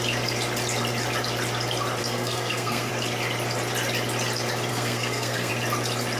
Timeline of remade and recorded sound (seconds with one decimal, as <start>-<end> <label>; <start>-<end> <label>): 0.0-2.0 recorded; 2.0-2.9 remade; 2.9-4.7 recorded; 4.7-5.5 remade; 5.5-6.2 recorded